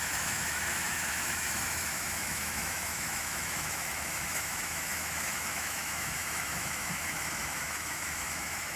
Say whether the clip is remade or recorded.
remade